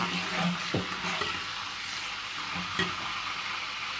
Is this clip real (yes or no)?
yes